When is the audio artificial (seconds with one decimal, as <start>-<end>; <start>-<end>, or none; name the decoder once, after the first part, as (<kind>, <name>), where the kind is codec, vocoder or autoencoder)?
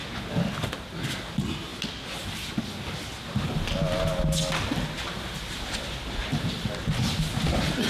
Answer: none